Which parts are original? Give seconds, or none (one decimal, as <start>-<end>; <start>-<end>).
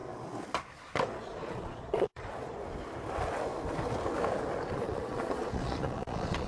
0.0-1.0; 2.6-4.7